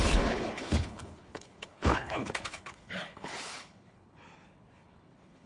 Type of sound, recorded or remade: remade